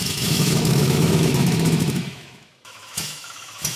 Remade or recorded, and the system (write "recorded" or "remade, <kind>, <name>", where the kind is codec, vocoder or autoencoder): remade, autoencoder, DAC-VAE